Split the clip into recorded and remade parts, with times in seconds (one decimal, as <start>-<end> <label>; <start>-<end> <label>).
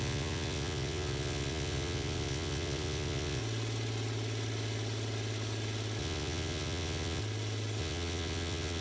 0.0-3.4 remade; 3.4-6.0 recorded; 6.0-7.2 remade; 7.2-7.8 recorded; 7.8-8.8 remade